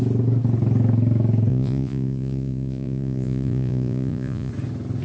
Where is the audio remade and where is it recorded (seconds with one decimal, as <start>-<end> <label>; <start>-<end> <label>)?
0.0-1.5 recorded; 1.5-4.5 remade; 4.5-5.0 recorded